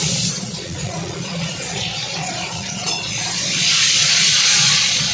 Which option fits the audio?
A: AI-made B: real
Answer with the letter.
A